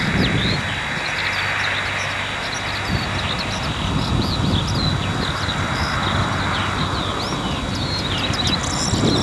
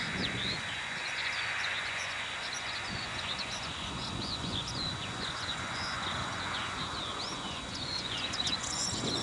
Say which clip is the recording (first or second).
first